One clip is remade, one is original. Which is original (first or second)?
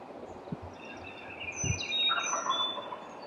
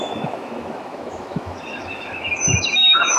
first